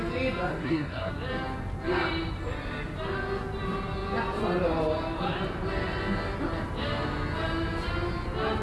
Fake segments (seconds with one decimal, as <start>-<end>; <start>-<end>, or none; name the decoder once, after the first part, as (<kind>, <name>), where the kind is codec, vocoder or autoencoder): 0.5-1.1 (codec, SNAC)

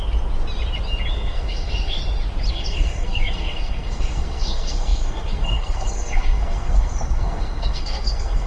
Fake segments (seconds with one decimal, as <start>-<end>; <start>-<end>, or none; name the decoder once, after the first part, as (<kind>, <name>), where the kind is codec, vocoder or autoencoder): 1.1-2.0 (codec, SNAC); 2.5-8.5

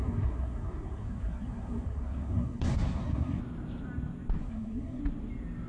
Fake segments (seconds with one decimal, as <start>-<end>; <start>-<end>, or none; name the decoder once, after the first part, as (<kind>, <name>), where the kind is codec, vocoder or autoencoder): 0.0-3.4 (codec, SNAC); 4.4-5.0

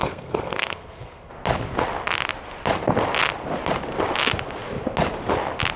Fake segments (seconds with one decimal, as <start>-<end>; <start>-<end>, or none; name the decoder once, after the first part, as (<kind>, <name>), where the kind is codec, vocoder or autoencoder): 0.0-1.3 (codec, SNAC)

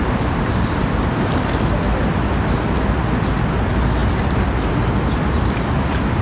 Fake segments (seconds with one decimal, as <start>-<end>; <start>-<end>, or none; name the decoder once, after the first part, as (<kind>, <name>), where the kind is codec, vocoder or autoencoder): none

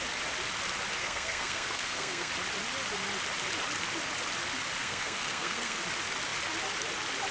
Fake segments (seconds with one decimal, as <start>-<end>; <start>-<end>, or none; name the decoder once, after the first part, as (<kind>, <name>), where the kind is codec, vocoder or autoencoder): 1.0-2.3 (codec, SNAC); 4.8-5.8